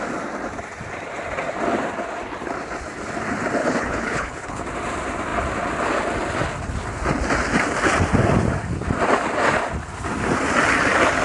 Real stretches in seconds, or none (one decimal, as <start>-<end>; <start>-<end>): 0.0-3.6; 4.6-11.2